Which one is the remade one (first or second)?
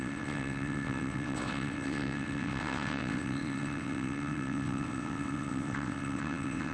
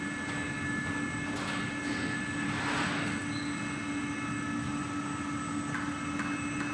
first